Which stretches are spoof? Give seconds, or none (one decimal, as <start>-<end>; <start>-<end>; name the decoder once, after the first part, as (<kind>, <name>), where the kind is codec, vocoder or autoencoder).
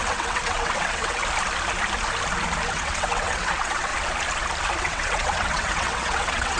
0.0-1.2 (vocoder, WaveNeXt); 2.7-3.9; 4.8-6.6